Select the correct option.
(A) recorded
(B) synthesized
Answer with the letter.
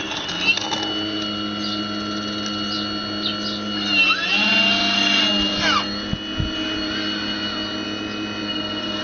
A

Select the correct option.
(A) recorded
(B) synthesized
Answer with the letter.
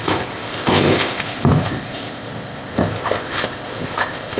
B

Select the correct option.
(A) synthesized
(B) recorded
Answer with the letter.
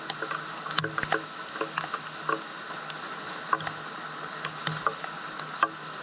B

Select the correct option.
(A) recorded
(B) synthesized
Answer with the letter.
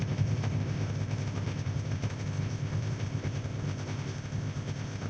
B